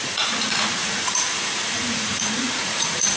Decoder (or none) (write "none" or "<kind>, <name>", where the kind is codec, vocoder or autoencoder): vocoder, Vocos